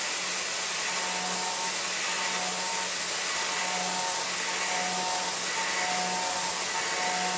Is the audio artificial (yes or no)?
no